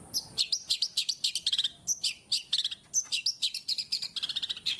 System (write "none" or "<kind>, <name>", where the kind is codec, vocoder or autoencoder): none